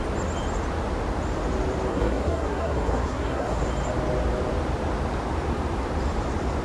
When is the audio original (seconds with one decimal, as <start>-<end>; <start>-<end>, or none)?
0.0-1.9; 3.6-6.6